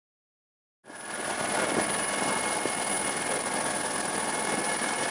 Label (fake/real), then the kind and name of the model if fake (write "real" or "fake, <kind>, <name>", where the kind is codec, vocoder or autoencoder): real